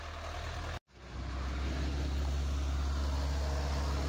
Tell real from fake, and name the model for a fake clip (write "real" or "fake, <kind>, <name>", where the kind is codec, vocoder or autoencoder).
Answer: real